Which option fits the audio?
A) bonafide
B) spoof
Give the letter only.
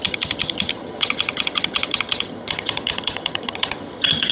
B